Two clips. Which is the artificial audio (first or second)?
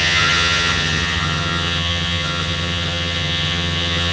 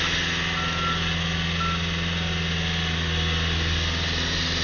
first